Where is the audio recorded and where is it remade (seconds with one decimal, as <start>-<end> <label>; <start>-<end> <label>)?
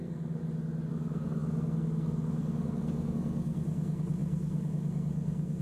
0.0-0.4 remade; 0.4-0.9 recorded; 0.9-5.6 remade